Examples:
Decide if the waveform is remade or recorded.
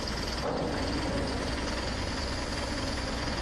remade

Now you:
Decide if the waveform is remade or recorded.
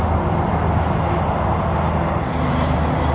recorded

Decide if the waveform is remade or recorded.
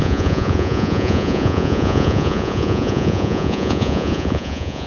remade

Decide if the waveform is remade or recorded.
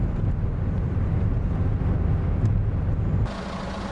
recorded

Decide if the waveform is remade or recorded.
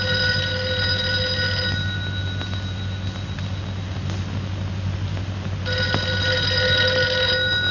recorded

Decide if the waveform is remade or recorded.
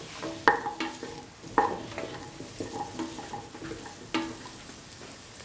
recorded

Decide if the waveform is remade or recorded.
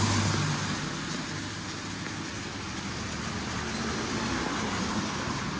recorded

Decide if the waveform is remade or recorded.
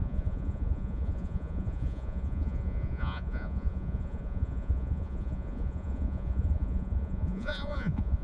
remade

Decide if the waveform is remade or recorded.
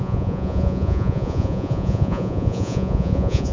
remade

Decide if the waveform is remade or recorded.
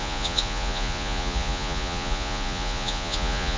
remade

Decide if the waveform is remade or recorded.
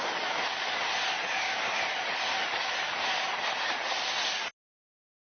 recorded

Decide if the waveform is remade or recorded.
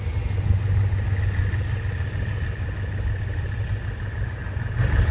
recorded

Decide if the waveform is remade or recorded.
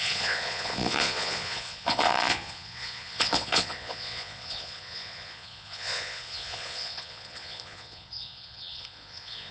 remade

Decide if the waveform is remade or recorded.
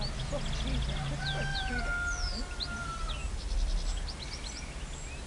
recorded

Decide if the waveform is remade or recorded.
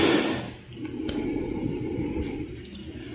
recorded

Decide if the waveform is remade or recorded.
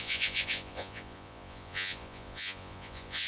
remade